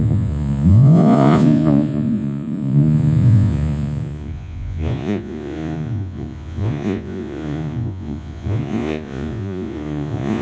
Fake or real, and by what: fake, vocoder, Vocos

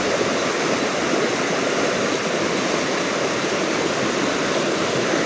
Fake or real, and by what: real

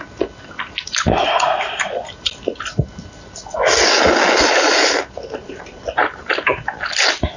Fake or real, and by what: real